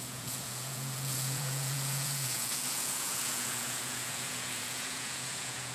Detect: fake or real fake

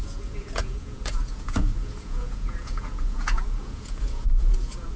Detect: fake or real fake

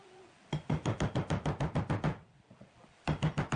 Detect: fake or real real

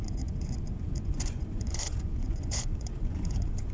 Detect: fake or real fake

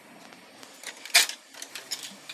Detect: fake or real real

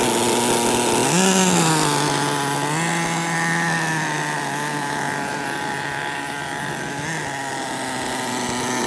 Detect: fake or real real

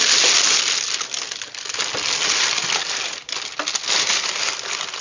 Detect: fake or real real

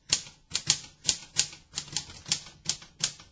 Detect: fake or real real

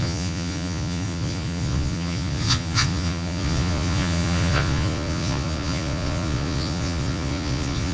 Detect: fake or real fake